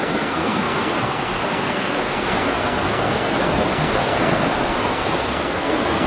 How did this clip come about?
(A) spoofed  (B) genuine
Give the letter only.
A